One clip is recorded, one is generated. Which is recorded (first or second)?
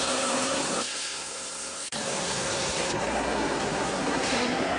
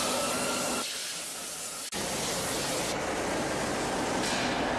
second